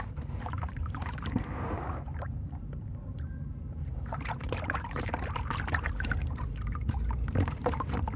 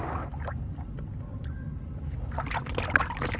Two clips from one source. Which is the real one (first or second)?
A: second